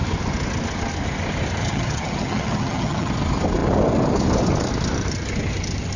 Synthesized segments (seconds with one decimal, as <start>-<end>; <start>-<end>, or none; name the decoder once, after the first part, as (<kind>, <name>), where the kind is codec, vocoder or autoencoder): 1.6-3.1 (vocoder, HiFi-GAN)